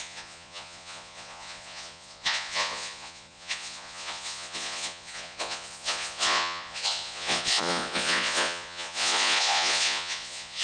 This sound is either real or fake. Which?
fake